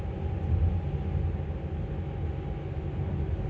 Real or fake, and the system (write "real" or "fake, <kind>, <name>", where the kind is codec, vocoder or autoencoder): real